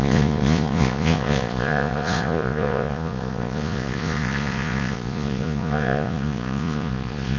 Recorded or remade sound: remade